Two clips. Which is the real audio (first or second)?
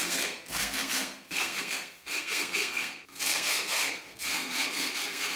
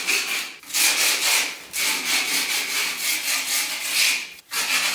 second